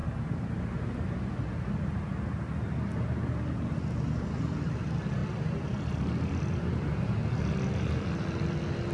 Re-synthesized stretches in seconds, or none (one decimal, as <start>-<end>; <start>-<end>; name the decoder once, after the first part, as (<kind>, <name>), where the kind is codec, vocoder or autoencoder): none